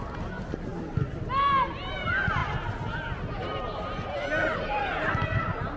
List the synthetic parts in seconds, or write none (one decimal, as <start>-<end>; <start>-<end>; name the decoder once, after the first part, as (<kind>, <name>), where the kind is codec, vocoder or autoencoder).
none